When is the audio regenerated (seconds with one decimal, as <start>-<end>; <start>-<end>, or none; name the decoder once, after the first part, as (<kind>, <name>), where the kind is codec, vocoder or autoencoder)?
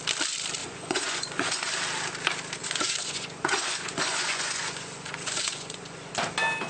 0.6-1.7 (vocoder, Vocos); 2.6-6.1